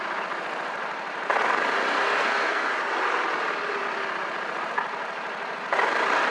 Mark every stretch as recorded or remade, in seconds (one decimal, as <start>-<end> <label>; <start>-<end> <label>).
0.0-2.2 recorded; 2.2-2.7 remade; 2.7-6.3 recorded